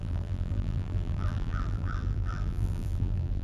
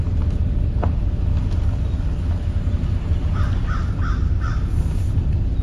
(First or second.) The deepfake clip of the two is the first